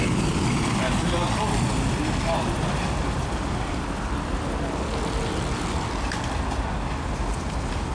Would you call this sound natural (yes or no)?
yes